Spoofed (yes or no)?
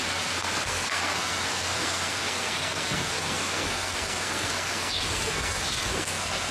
yes